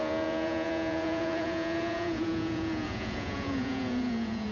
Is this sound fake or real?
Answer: fake